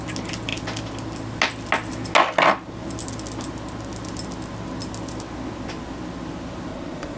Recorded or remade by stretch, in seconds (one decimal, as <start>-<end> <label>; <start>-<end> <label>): 0.0-6.7 recorded; 6.7-7.2 remade